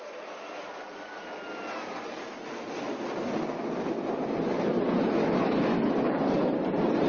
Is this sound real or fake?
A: real